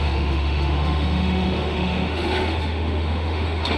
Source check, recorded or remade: remade